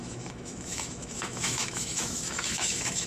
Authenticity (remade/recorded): remade